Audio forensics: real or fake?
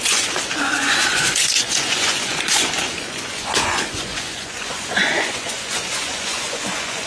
fake